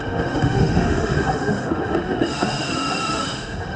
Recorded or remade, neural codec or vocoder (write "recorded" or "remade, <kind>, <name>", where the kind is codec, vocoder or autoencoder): remade, autoencoder, DAC-VAE